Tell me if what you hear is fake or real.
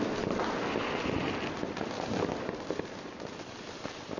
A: real